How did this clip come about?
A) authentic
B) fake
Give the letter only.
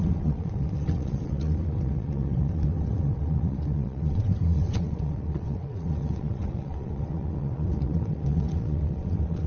B